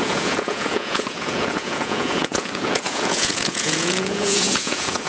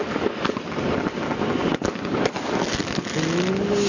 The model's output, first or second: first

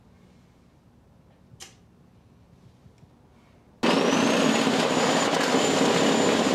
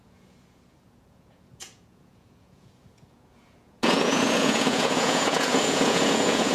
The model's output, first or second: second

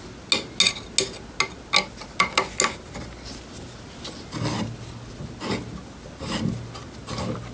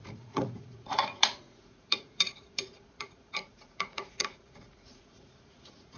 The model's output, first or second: second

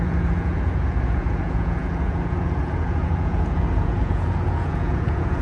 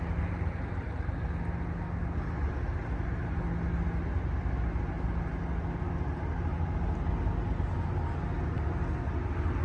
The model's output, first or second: first